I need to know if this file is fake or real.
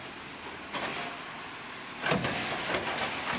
real